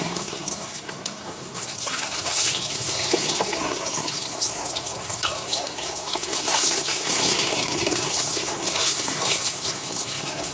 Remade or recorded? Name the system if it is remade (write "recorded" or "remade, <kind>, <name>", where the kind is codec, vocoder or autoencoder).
remade, codec, SNAC